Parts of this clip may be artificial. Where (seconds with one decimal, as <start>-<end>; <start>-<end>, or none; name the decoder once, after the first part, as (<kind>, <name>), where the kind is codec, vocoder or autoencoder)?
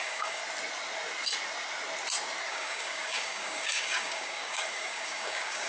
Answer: 0.0-0.4 (codec, DAC); 2.5-5.7